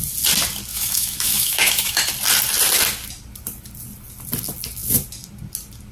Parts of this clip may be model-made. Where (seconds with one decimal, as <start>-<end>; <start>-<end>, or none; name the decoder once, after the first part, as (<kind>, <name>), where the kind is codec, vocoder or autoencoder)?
0.7-2.0 (autoencoder, DAC-VAE)